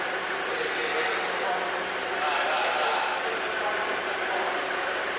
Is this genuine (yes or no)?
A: yes